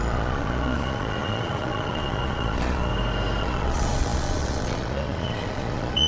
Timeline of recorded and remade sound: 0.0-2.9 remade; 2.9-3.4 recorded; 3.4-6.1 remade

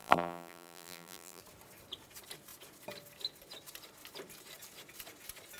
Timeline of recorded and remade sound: 0.0-1.4 remade; 1.4-5.6 recorded